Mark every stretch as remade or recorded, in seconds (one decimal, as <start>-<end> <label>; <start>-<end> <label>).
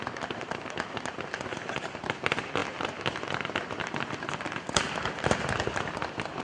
0.0-6.4 recorded